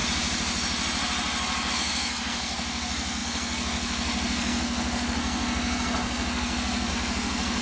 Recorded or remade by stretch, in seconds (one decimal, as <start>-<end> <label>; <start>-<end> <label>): 0.0-1.7 recorded; 1.7-7.6 remade